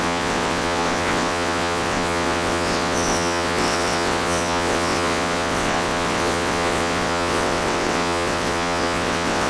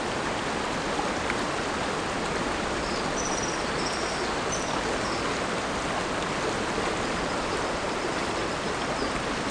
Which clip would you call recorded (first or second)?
second